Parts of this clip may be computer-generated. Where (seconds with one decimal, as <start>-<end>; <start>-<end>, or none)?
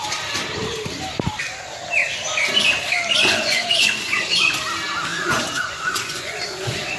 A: 3.2-4.5; 5.1-7.0